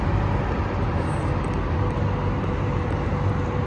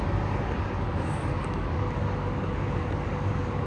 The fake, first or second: second